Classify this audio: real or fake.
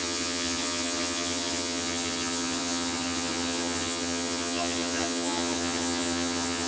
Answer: fake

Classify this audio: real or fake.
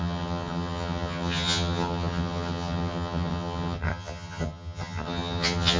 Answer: fake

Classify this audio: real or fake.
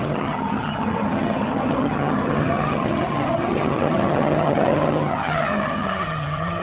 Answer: fake